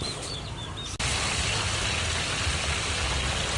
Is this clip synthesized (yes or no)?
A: no